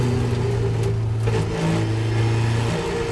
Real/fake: real